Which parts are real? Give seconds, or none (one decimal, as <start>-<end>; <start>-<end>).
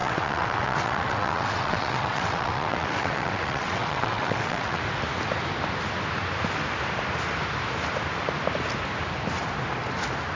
4.8-10.4